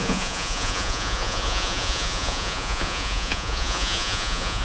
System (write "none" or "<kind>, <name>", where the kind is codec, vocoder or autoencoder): vocoder, Vocos